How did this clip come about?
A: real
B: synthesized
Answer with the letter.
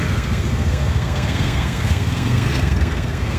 B